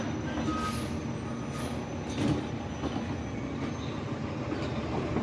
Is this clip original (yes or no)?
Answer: yes